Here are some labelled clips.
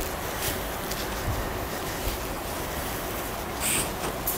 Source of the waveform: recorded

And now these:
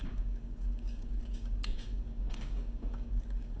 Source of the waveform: remade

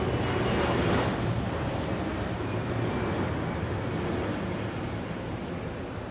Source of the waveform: recorded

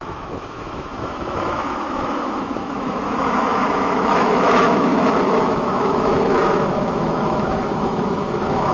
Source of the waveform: remade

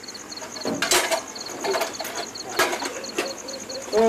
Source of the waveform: recorded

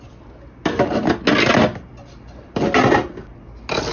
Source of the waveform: recorded